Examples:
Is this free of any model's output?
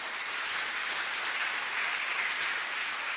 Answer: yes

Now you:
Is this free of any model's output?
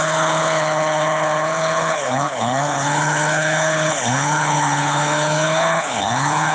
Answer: no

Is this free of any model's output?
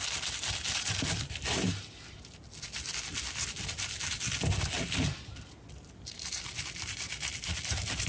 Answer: yes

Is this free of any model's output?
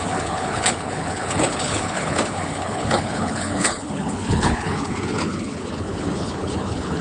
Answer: no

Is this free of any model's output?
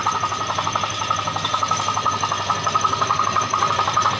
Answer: yes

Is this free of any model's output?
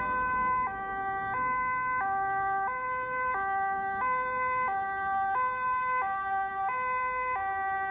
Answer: yes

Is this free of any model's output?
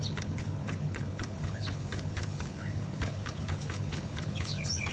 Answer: no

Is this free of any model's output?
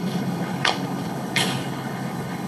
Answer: no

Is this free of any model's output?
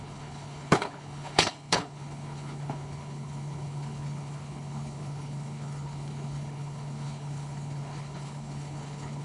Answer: no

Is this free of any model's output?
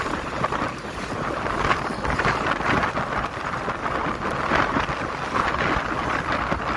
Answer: yes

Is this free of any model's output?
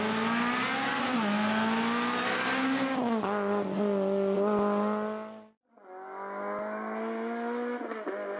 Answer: yes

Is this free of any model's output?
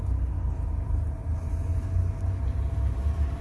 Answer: yes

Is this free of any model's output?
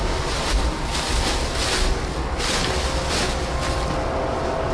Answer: yes